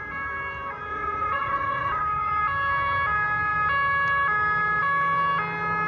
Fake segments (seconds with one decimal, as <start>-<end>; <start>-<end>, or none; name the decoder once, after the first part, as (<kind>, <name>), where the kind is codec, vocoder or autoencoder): 0.9-2.0 (vocoder, Vocos)